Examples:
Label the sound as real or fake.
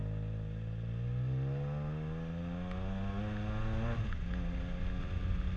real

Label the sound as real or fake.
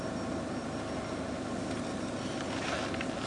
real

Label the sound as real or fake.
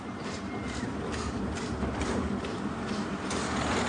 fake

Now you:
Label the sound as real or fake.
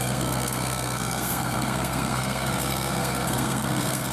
fake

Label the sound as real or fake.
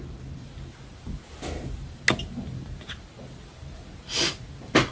real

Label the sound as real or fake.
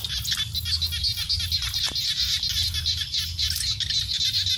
real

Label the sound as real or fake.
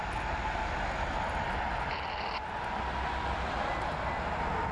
real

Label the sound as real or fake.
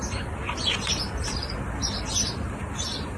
real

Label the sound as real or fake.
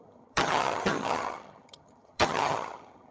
fake